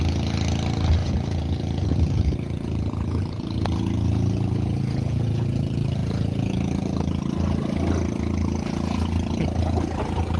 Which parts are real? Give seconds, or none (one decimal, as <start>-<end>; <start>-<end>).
0.0-1.0; 5.6-6.0; 6.7-10.4